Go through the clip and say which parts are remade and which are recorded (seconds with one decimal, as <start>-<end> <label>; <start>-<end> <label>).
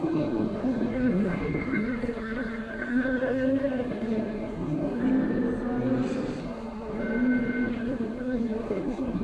0.0-5.0 remade; 5.0-6.4 recorded; 6.4-7.0 remade; 7.0-7.7 recorded; 7.7-9.2 remade